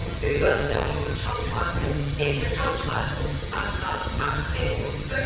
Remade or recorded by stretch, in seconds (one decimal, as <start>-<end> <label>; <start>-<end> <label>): 0.0-5.3 remade